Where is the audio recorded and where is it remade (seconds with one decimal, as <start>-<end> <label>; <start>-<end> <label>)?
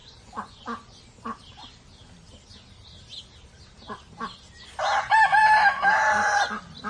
0.0-1.0 remade; 1.0-6.9 recorded